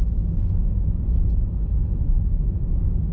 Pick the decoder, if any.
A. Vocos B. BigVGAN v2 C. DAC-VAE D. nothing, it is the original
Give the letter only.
C